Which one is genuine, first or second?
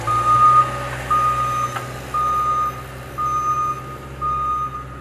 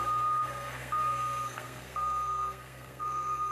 first